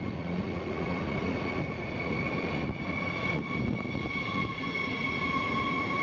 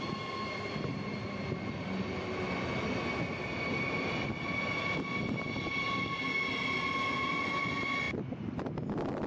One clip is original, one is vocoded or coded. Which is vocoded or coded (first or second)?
first